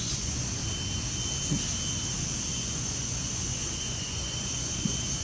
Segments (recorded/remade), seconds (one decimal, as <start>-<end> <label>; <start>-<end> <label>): 0.0-0.6 remade; 0.6-2.5 recorded; 2.5-5.2 remade